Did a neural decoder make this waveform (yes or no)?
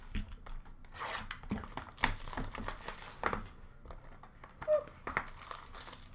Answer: no